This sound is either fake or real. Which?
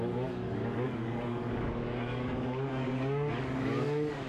fake